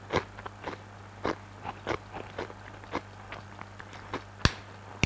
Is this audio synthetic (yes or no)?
no